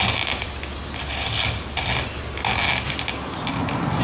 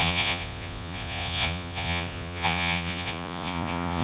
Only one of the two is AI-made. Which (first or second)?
second